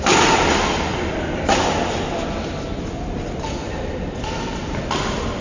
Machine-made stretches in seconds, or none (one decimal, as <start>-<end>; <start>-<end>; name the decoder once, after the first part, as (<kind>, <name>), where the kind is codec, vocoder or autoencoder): none

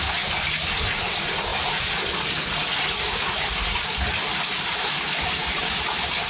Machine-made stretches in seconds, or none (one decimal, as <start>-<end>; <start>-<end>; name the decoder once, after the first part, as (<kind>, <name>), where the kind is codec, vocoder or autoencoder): none